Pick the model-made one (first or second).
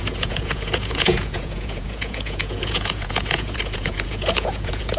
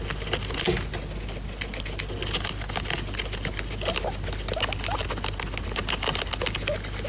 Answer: first